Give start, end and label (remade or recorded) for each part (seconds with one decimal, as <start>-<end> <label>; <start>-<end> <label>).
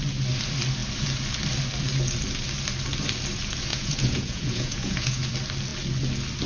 0.0-3.7 recorded; 3.7-5.3 remade; 5.3-6.5 recorded